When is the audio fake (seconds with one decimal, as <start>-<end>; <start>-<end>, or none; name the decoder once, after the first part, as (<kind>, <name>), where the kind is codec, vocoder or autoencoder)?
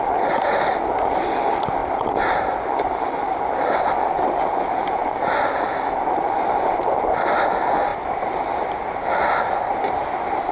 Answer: none